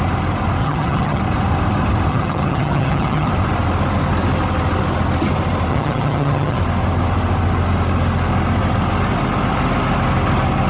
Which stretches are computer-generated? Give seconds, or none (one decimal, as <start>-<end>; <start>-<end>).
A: 0.6-1.2; 2.1-3.3; 5.7-6.6